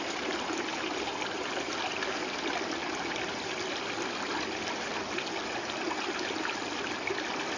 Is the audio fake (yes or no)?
no